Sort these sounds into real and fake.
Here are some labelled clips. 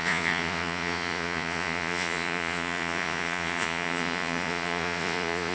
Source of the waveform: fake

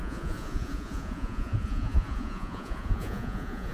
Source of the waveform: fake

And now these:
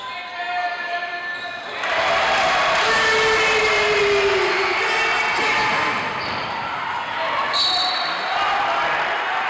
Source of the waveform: real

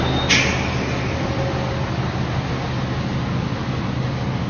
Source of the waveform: real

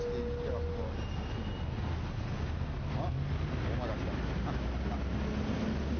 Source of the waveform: real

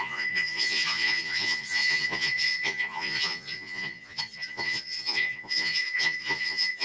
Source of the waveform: fake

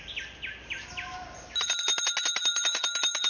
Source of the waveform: real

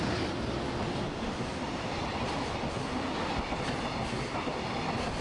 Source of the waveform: real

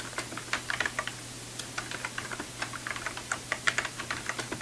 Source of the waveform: real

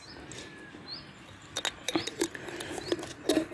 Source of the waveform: real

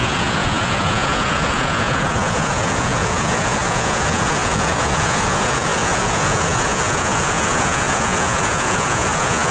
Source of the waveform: fake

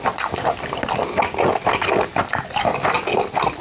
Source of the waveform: real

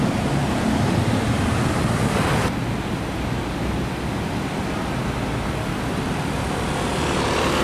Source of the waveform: real